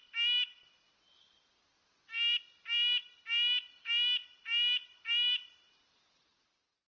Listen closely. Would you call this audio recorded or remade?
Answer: recorded